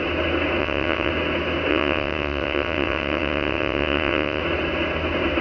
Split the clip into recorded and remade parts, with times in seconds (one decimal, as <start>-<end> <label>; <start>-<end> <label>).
0.0-0.6 recorded; 0.6-1.1 remade; 1.1-1.7 recorded; 1.7-4.4 remade; 4.4-5.4 recorded